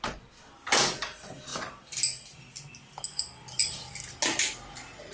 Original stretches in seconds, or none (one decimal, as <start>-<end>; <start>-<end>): 0.0-5.1